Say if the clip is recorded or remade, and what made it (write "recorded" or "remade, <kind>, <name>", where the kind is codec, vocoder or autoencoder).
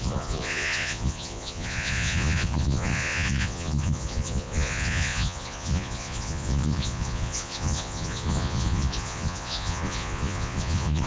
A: remade, vocoder, Vocos